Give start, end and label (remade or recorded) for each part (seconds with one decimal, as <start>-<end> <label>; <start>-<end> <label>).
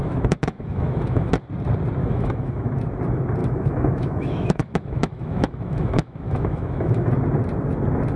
0.0-1.3 remade; 1.3-2.0 recorded; 2.0-2.8 remade; 2.8-3.4 recorded; 3.4-7.1 remade; 7.1-8.2 recorded